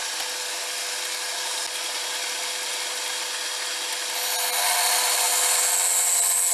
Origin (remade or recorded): recorded